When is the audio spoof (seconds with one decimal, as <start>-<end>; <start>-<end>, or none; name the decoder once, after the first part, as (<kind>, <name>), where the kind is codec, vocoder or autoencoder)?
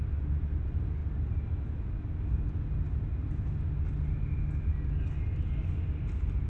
none